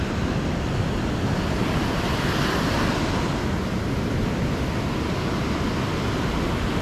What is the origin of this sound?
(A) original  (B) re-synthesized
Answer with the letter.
A